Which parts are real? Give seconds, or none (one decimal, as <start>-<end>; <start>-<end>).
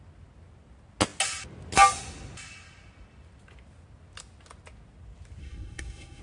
0.0-5.4